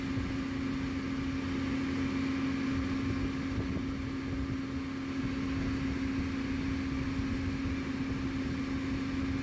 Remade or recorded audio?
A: recorded